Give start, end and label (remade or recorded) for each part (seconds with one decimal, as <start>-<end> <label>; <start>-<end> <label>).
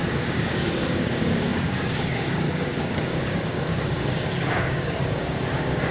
0.0-5.9 remade